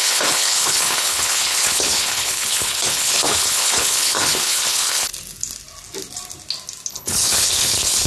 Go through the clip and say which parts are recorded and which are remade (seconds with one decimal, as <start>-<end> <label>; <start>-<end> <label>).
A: 0.0-5.1 remade; 5.1-6.9 recorded; 6.9-8.1 remade